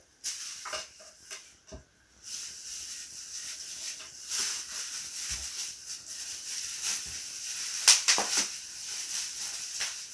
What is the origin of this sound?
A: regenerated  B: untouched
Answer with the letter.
B